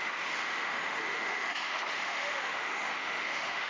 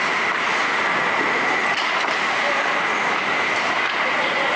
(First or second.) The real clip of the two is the second